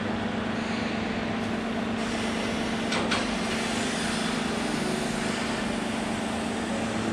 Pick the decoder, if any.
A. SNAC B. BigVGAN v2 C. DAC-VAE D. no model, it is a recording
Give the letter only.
D